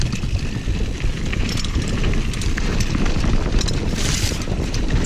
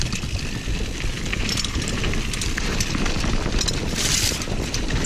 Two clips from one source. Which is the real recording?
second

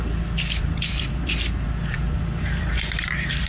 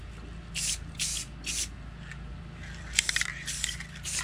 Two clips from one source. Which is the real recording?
second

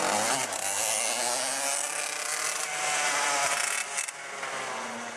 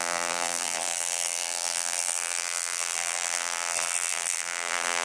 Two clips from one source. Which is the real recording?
first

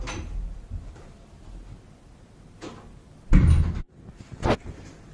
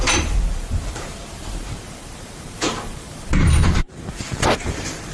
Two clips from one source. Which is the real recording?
first